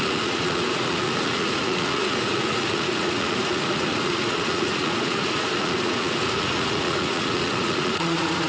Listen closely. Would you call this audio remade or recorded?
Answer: remade